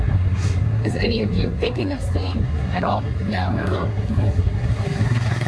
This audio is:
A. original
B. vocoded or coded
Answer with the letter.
B